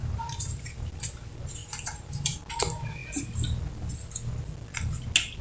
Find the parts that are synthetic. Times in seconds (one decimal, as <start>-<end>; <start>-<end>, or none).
0.0-0.9; 1.6-2.5